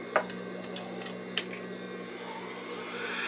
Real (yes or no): yes